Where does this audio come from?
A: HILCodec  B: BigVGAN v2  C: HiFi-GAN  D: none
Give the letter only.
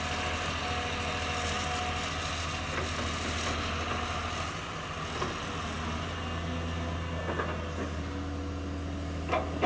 D